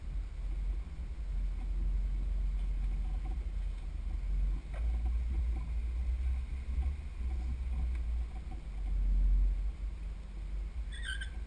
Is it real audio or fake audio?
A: real